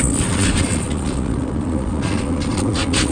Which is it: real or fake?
fake